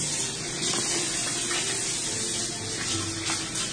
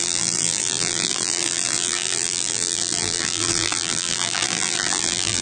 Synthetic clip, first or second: second